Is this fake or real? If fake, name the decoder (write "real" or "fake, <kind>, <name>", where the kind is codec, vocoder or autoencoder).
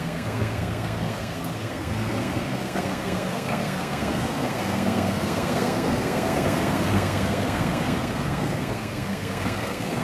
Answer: fake, codec, SNAC